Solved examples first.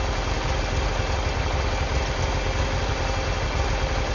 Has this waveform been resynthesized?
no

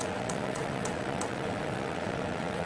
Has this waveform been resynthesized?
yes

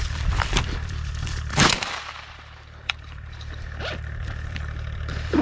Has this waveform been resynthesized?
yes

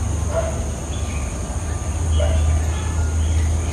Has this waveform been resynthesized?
no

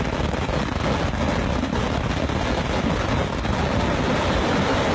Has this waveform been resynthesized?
no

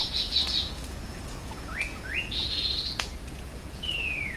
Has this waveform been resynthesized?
yes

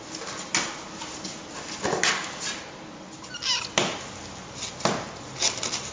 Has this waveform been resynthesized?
no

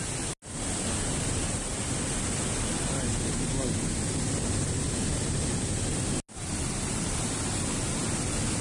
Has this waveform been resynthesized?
no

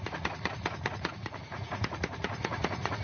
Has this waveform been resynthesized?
yes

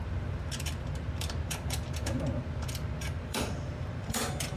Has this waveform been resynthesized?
yes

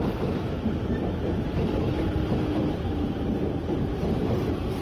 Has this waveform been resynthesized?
yes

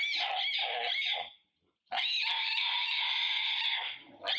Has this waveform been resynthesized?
no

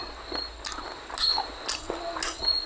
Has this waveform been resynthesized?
no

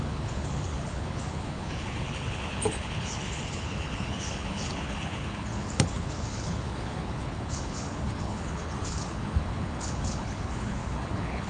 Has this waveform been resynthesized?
yes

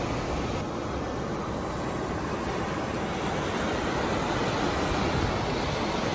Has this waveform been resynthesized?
no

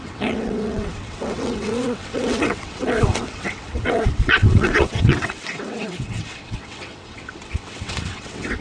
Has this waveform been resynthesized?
yes